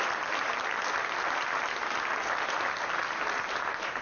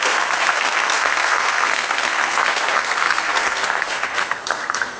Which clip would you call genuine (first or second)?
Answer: first